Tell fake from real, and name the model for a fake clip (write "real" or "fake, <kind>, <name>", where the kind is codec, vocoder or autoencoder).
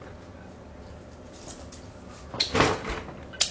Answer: real